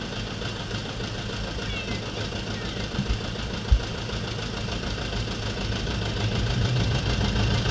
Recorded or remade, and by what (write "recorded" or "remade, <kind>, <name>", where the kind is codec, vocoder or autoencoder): recorded